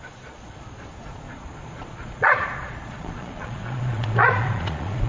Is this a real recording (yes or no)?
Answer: no